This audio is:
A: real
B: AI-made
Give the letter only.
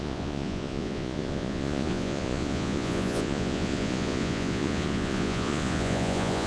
B